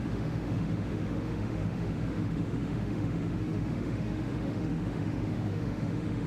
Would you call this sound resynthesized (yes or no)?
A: yes